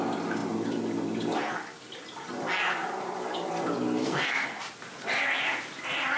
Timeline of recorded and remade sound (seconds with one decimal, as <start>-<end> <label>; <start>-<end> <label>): 0.0-4.0 recorded; 4.0-4.6 remade; 4.6-6.2 recorded